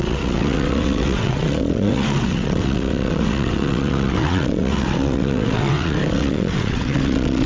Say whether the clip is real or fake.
fake